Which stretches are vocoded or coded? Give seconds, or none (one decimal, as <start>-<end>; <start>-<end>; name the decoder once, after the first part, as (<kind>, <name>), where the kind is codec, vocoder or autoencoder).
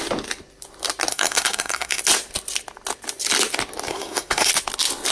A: 1.1-2.0 (codec, SNAC); 3.9-4.5